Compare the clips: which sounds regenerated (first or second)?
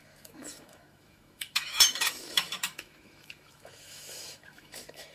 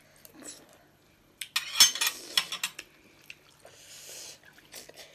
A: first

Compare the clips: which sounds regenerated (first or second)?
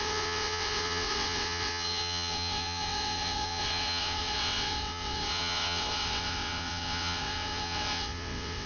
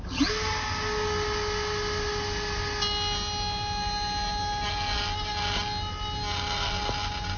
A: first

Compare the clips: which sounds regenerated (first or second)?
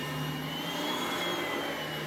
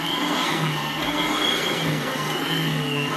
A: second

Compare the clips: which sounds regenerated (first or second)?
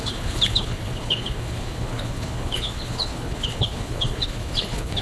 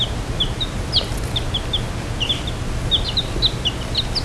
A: first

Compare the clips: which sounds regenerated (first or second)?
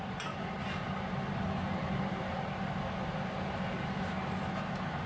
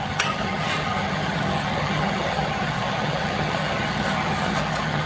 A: second